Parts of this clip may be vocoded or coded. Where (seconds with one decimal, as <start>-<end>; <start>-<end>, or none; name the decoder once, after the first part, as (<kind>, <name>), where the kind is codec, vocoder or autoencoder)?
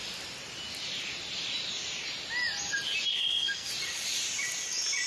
3.1-3.7 (codec, SNAC)